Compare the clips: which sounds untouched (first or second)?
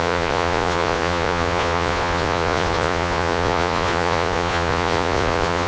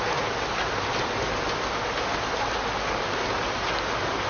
second